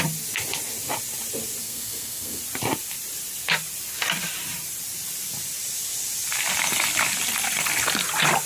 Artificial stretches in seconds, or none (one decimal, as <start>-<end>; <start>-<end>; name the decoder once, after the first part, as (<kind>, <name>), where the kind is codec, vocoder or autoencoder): 1.6-2.4 (codec, SNAC)